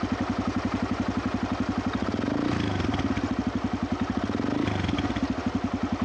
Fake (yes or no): no